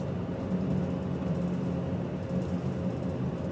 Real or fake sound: real